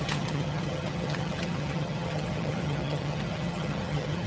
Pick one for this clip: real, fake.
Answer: fake